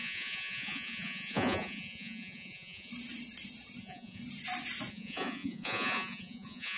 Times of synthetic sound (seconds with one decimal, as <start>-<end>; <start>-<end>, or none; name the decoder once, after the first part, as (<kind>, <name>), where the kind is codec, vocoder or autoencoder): 0.0-2.9 (vocoder, Vocos); 3.8-4.2; 4.9-6.8